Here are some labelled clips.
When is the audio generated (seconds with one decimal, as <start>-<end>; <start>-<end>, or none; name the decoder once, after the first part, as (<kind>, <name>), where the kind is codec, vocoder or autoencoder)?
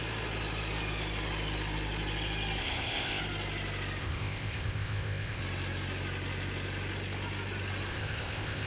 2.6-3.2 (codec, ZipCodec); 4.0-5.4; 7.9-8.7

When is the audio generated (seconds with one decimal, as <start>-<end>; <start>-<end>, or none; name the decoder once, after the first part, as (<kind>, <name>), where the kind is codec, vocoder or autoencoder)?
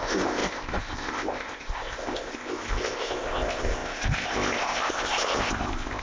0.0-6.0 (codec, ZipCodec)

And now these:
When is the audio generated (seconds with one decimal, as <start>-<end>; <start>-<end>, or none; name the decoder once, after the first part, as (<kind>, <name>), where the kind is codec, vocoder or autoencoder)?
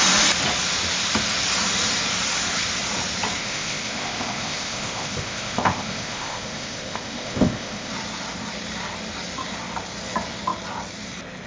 3.4-7.9 (codec, ZipCodec)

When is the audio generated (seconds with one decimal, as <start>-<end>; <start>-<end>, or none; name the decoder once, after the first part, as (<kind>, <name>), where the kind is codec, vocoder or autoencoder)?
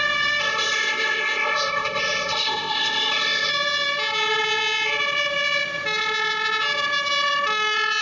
0.4-3.5 (codec, ZipCodec)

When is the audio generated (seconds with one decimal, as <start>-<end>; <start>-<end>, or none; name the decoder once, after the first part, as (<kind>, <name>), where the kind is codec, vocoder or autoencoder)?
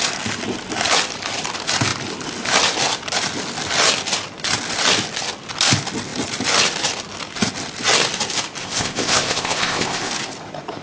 8.6-10.1 (codec, ZipCodec)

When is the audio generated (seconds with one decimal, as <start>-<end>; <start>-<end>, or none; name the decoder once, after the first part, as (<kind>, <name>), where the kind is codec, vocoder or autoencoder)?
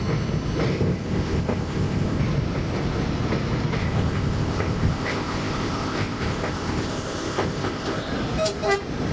0.7-2.2 (codec, ZipCodec); 3.8-8.1